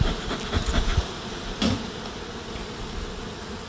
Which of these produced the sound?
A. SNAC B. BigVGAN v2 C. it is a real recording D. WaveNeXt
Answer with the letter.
C